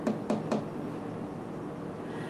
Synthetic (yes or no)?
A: no